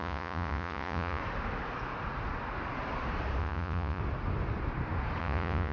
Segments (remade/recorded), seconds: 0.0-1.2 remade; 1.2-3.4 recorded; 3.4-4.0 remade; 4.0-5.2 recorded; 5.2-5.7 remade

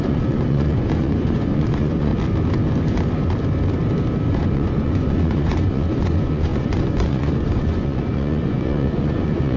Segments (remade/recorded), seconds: 0.0-2.1 remade; 2.1-4.3 recorded; 4.3-9.6 remade

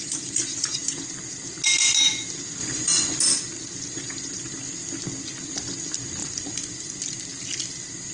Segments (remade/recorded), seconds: 0.0-2.6 recorded; 2.6-3.2 remade; 3.2-6.2 recorded; 6.2-7.0 remade; 7.0-8.1 recorded

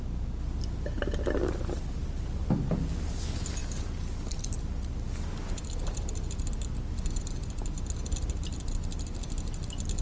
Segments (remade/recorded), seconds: 0.0-10.0 recorded

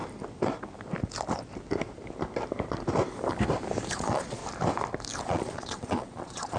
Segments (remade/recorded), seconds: 0.0-3.9 recorded; 3.9-4.4 remade; 4.4-5.2 recorded; 5.2-6.6 remade

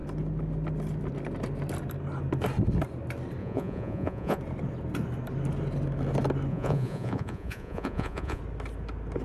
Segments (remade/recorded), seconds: 0.0-3.4 recorded; 3.4-4.4 remade; 4.4-6.5 recorded; 6.5-8.4 remade; 8.4-9.2 recorded